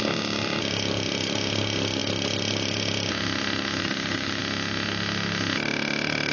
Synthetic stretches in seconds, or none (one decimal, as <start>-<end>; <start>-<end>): 3.8-4.4